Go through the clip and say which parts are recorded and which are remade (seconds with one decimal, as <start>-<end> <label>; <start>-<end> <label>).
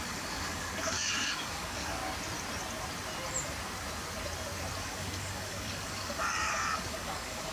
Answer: 0.0-2.0 remade; 2.0-4.8 recorded; 4.8-7.5 remade